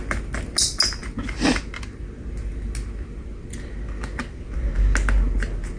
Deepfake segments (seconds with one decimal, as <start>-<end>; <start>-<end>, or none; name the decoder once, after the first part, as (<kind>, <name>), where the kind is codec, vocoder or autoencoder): none